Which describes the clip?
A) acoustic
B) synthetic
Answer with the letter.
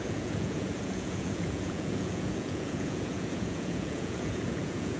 B